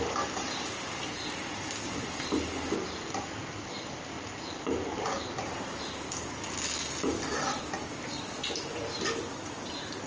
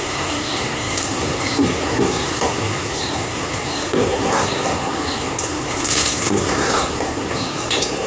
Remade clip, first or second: second